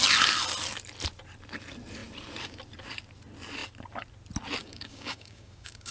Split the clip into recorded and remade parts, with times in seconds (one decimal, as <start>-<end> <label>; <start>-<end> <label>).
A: 0.0-4.6 recorded; 4.6-5.9 remade